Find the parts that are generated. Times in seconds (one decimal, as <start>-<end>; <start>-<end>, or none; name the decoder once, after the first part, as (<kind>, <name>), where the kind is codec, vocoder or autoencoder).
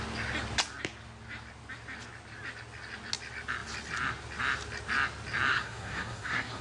5.5-6.6 (codec, SNAC)